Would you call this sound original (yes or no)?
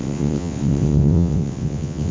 no